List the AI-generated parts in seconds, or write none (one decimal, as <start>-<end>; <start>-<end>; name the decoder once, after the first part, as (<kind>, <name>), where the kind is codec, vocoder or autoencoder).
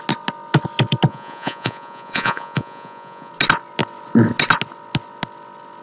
1.1-3.3 (vocoder, Vocos)